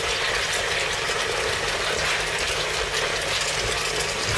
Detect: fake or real fake